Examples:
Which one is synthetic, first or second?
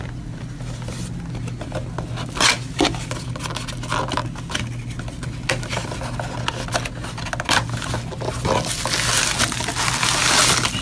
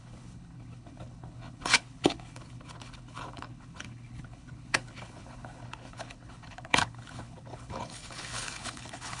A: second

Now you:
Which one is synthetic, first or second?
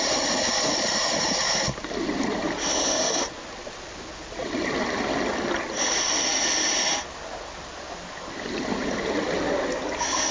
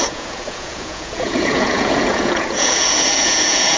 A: second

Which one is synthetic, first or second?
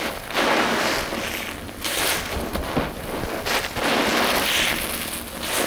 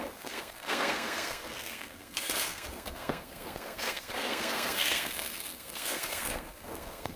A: second